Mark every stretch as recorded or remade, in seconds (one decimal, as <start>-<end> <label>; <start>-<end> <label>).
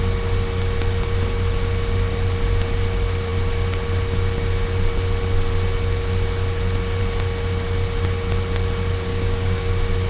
0.0-9.1 recorded; 9.1-9.7 remade; 9.7-10.1 recorded